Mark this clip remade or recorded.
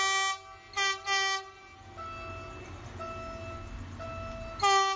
recorded